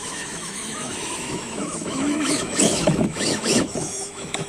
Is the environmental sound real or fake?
fake